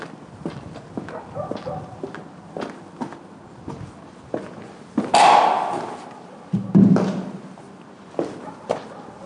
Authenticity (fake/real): real